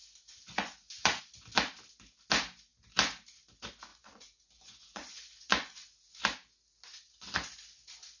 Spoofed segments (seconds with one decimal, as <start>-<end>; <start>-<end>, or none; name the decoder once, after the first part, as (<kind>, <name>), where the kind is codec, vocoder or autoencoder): 0.0-1.2 (vocoder, Vocos); 3.9-6.2